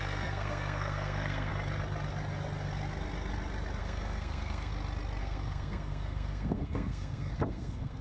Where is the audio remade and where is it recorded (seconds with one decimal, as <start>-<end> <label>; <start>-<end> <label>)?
0.0-1.5 remade; 1.5-3.8 recorded; 3.8-4.7 remade; 4.7-5.2 recorded; 5.2-8.0 remade